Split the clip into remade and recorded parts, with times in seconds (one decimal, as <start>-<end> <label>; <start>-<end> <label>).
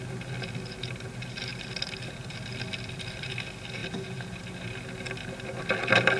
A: 0.0-6.2 recorded